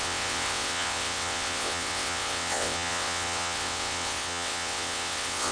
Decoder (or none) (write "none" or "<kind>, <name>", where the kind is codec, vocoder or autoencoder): vocoder, WaveNeXt